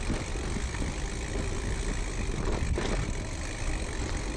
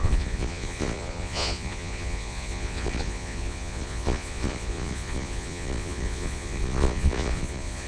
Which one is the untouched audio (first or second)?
first